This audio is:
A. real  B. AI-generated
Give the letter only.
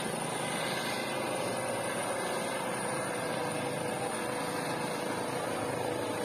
A